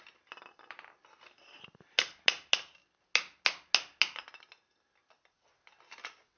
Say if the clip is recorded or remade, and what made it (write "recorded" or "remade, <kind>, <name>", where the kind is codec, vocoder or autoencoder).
recorded